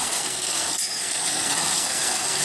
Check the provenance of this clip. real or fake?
fake